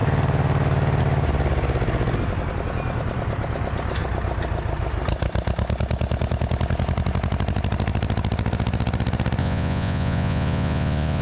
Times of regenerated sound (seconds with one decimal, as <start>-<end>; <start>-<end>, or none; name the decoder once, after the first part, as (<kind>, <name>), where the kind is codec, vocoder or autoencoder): 9.4-11.2 (vocoder, Vocos)

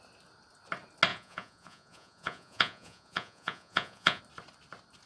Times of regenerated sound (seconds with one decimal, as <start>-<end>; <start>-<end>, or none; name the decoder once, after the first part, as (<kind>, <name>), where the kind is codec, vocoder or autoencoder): 1.1-4.2 (vocoder, Vocos)

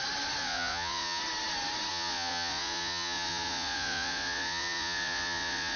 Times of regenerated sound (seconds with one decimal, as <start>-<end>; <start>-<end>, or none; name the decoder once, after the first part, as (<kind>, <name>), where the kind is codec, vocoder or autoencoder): 0.4-1.2 (vocoder, Vocos); 1.9-5.8

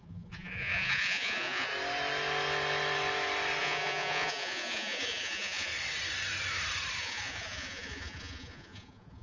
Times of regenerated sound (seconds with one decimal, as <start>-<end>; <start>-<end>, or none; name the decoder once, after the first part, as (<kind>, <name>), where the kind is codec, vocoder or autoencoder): 0.0-1.7 (vocoder, Vocos); 3.6-5.7; 7.0-9.2

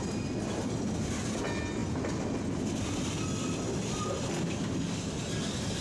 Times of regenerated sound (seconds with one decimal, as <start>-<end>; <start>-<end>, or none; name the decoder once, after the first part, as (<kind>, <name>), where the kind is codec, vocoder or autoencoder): none

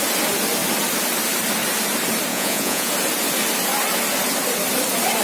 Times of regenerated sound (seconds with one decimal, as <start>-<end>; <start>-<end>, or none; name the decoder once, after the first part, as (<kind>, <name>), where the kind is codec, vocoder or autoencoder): 2.3-2.9 (vocoder, Vocos)

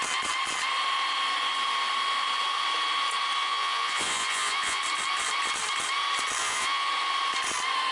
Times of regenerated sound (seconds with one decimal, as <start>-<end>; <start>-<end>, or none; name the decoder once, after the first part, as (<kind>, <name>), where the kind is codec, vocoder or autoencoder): 3.4-4.8 (vocoder, Vocos); 6.4-6.9